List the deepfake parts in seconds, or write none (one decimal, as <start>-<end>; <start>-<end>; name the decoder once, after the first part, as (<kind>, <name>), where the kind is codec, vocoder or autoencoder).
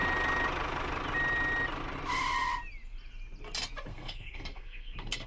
3.9-5.3 (codec, SNAC)